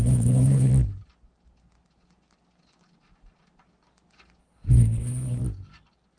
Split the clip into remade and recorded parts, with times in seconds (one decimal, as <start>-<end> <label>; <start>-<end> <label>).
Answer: 0.0-0.7 remade; 0.7-4.4 recorded; 4.4-5.4 remade; 5.4-6.2 recorded